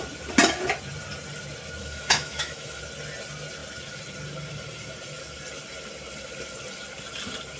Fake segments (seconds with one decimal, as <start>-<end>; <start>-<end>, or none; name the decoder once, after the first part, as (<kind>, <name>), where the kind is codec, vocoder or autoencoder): 1.8-2.8 (autoencoder, DAC-VAE)